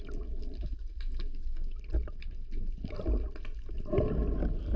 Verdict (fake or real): real